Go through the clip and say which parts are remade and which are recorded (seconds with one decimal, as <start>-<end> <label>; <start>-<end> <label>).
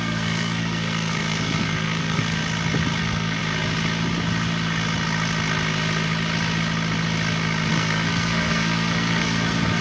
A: 0.0-2.4 remade; 2.4-3.0 recorded; 3.0-3.4 remade; 3.4-7.7 recorded; 7.7-9.8 remade